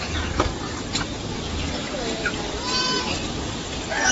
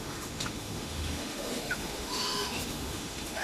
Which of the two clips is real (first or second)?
first